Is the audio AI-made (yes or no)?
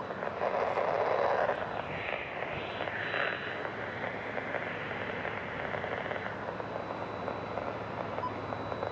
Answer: no